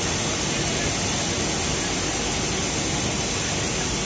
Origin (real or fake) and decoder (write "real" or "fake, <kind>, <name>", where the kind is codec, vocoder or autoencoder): real